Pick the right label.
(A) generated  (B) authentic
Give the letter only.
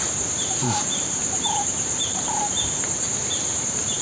A